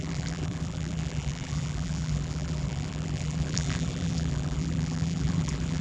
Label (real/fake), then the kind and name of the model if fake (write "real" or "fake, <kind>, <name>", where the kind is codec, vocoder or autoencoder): fake, vocoder, BigVGAN v2